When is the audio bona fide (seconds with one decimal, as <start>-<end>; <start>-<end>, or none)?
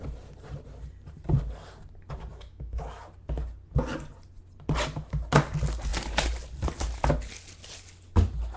0.0-2.3; 2.8-8.6